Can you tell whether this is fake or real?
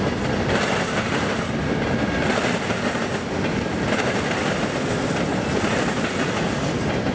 real